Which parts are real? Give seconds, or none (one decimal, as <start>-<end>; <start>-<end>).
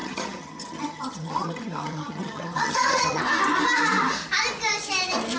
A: 3.2-5.4